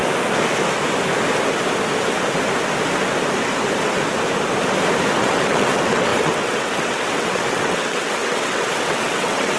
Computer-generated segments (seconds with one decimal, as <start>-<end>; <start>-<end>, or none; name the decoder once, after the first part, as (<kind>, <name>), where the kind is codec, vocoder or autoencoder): 5.2-9.6 (vocoder, WaveNeXt)